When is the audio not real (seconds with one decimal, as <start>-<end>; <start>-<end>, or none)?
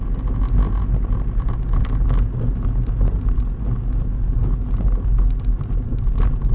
none